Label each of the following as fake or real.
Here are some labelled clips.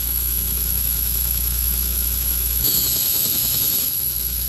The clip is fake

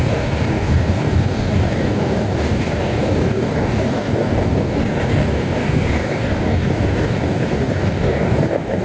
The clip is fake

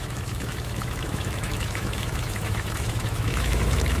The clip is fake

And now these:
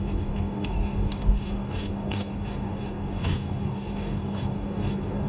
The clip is fake